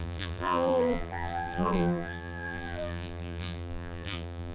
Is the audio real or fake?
fake